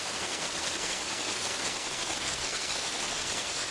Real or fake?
fake